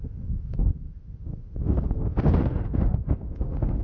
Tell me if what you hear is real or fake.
fake